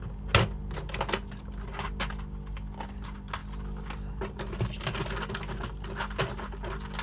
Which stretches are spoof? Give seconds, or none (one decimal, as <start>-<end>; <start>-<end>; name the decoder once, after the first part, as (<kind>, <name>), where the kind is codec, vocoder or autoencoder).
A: none